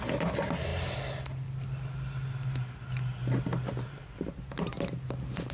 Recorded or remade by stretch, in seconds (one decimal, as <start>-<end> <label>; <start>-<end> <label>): 0.0-0.7 recorded; 0.7-2.3 remade; 2.3-5.5 recorded